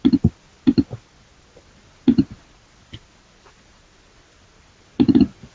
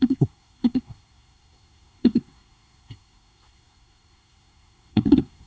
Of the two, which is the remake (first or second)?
second